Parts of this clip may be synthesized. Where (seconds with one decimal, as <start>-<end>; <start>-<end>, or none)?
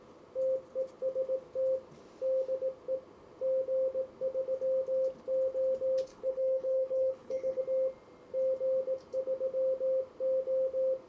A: 6.1-7.6